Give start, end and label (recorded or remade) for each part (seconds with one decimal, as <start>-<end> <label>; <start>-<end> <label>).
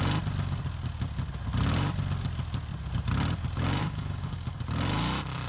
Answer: 0.0-3.8 recorded; 3.8-4.6 remade; 4.6-5.5 recorded